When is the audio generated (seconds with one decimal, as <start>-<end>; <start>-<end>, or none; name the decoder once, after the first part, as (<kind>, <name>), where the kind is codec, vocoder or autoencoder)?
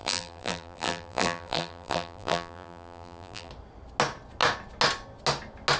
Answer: 0.0-3.5 (vocoder, BigVGAN v2)